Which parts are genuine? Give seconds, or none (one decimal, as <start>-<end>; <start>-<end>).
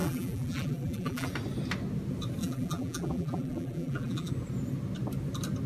1.3-2.4; 4.3-5.7